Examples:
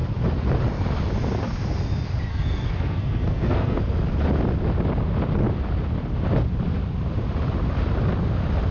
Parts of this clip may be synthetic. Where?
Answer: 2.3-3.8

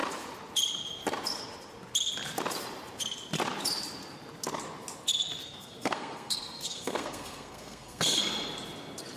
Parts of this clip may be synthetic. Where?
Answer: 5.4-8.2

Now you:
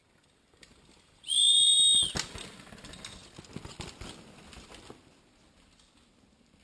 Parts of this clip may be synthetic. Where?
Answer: 0.0-2.0